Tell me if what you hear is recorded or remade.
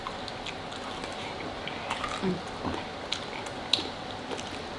recorded